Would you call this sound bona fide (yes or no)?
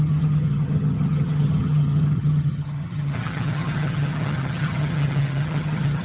no